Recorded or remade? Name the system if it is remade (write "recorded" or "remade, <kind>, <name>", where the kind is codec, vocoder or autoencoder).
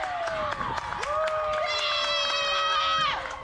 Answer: recorded